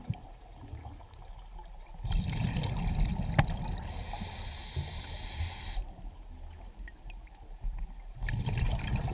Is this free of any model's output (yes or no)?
yes